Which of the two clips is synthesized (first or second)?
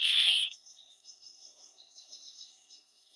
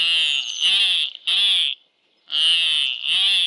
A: first